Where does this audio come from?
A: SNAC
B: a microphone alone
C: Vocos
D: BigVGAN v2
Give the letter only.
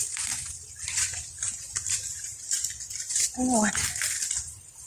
B